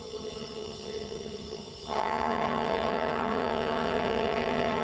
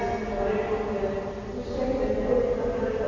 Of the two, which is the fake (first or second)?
first